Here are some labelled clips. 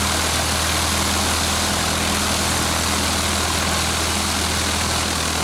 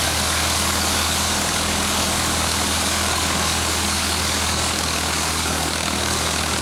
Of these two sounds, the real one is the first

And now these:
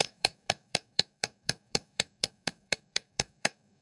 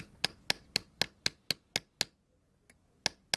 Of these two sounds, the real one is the second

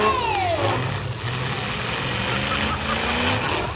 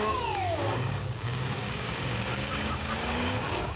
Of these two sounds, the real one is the first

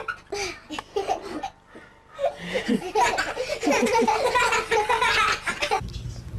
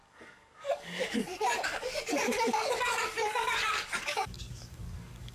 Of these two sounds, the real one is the first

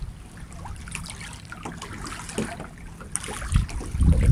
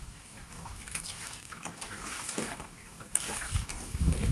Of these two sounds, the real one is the first